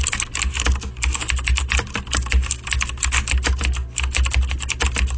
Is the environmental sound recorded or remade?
recorded